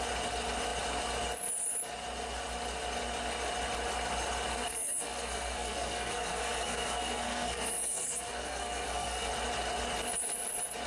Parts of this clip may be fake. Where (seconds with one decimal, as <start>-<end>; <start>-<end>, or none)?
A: 4.5-9.3